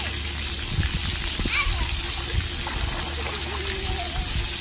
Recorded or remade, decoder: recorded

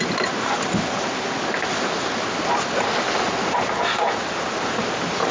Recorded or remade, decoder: recorded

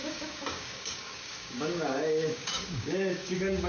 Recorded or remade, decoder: remade, codec, DAC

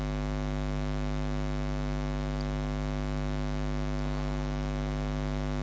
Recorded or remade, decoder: recorded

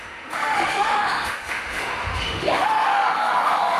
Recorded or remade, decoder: remade, autoencoder, DAC-VAE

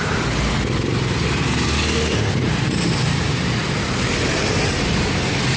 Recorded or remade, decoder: recorded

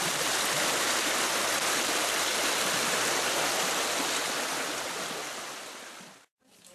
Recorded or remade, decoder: recorded